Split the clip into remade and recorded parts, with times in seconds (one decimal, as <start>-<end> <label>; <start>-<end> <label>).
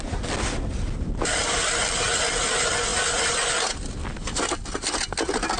0.0-5.6 recorded